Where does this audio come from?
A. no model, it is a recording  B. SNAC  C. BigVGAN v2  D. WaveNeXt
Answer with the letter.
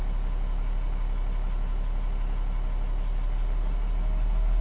A